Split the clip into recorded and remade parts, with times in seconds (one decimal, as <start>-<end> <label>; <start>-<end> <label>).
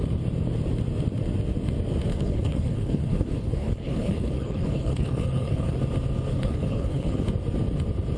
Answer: 0.0-2.1 recorded; 2.1-5.8 remade; 5.8-6.3 recorded; 6.3-7.2 remade; 7.2-8.2 recorded